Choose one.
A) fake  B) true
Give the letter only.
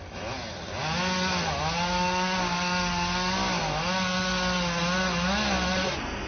B